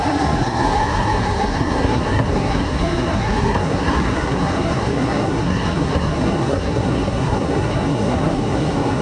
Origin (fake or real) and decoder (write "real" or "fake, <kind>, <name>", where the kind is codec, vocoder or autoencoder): fake, codec, SNAC